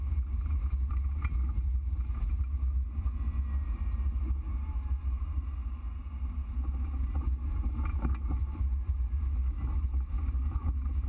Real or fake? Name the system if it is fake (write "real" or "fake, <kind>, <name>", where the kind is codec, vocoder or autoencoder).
real